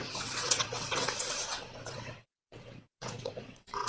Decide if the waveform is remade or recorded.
remade